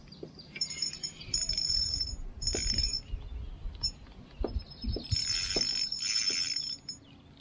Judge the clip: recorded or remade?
recorded